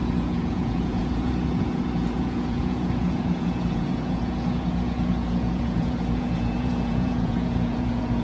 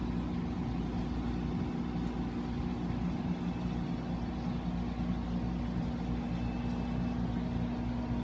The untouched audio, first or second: second